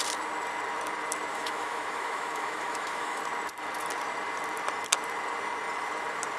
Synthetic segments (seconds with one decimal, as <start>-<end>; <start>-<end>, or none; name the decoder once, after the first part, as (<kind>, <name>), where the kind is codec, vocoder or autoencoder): 1.3-3.2 (autoencoder, DAC-VAE)